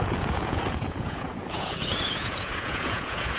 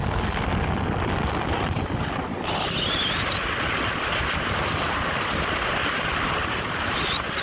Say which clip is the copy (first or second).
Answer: first